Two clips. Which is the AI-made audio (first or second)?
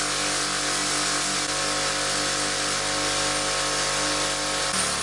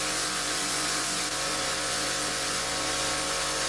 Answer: second